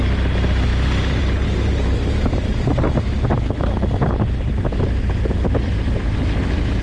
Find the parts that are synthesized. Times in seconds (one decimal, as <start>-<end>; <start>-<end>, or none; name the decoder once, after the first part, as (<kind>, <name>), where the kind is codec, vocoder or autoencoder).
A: none